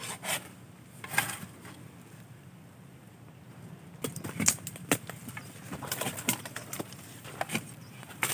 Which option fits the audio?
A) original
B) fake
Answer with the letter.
A